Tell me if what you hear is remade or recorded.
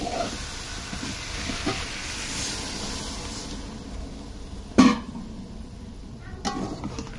recorded